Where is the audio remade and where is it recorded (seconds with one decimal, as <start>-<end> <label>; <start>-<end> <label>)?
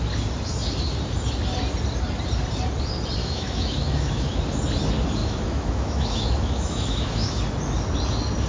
0.0-3.2 recorded; 3.2-4.4 remade; 4.4-5.2 recorded; 5.2-7.4 remade; 7.4-8.5 recorded